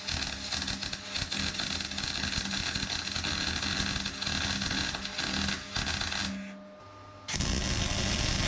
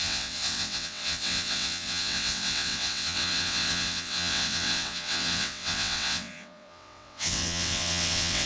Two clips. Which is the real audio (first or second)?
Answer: first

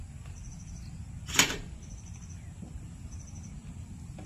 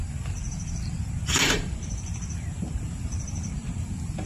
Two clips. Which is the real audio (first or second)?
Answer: first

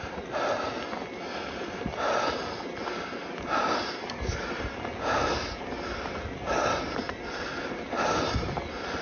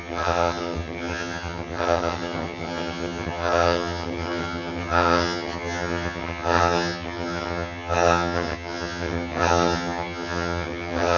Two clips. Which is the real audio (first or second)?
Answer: first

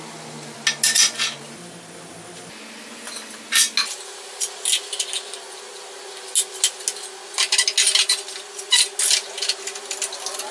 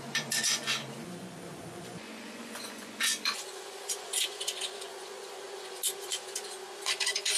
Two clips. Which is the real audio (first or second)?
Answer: first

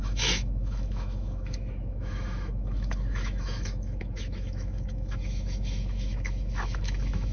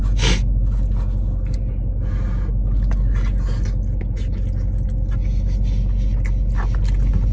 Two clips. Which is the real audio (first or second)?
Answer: second